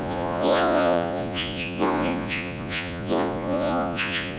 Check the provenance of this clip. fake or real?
fake